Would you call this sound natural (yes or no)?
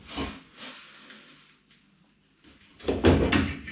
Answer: yes